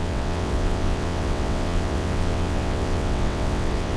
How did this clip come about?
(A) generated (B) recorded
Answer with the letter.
A